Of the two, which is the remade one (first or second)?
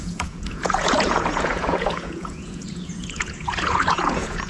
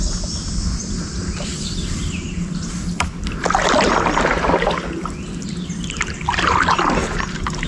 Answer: first